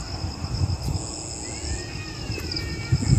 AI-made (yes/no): no